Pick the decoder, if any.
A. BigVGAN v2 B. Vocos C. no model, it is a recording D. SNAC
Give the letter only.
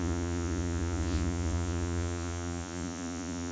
B